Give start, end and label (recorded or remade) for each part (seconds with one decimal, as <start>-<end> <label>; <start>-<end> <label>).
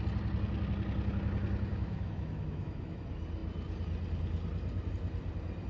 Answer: 0.0-1.7 recorded; 1.7-3.0 remade; 3.0-5.7 recorded